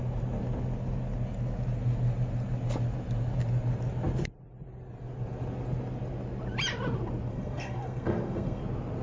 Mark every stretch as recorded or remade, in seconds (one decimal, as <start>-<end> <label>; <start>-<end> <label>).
0.0-7.3 recorded; 7.3-8.6 remade; 8.6-9.0 recorded